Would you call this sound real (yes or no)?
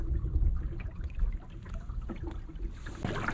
yes